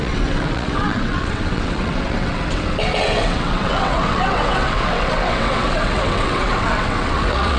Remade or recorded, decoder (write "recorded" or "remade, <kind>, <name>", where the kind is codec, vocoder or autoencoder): remade, vocoder, WaveNeXt